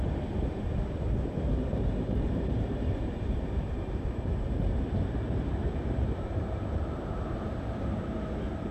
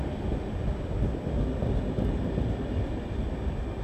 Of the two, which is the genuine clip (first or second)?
second